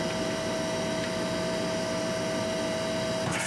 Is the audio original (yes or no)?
yes